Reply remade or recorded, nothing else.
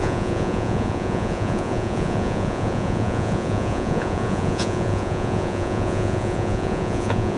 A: remade